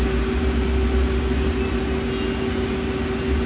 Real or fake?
real